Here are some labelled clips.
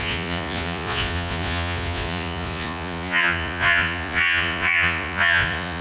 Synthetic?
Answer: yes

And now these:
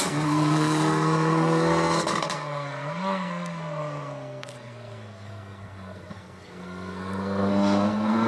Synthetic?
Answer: yes